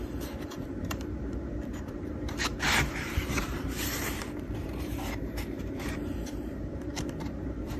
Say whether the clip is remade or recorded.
remade